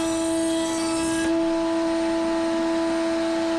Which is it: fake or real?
real